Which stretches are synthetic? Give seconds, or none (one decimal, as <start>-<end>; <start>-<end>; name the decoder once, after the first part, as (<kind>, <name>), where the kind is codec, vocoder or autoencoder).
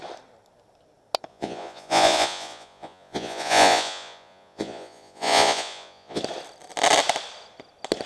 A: 1.3-6.2 (vocoder, Vocos)